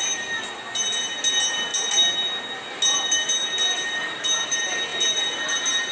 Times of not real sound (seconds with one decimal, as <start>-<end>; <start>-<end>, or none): none